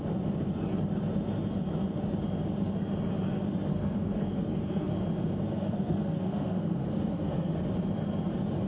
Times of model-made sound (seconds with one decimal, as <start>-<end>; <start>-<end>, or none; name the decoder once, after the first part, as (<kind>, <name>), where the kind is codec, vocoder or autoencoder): 3.7-4.9 (codec, SNAC); 5.5-7.5